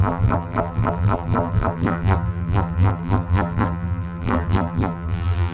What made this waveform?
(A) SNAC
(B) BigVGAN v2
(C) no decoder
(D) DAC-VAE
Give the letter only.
B